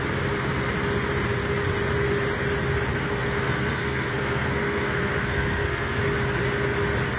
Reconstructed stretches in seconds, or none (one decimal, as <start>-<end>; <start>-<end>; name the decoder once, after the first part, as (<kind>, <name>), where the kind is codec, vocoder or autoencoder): 2.9-6.0 (codec, SNAC)